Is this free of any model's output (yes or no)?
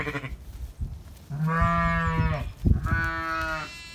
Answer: yes